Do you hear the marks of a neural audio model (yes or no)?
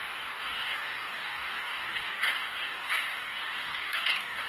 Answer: yes